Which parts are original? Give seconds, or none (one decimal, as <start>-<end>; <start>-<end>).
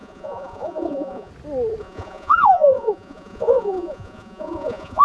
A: 1.3-1.8